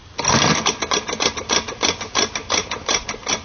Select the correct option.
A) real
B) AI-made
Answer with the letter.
A